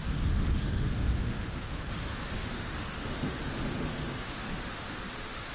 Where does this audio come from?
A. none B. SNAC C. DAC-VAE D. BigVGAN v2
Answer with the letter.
C